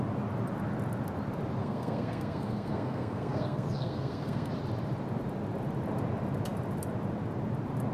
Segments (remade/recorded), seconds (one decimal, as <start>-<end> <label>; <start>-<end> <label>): 0.0-1.6 recorded; 1.6-4.5 remade; 4.5-7.9 recorded